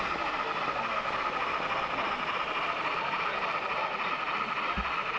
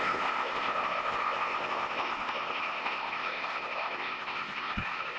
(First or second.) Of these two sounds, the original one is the first